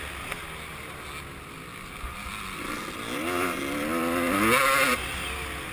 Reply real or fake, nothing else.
real